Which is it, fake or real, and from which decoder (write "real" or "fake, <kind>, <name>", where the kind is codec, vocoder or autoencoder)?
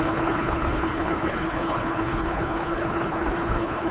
fake, codec, HILCodec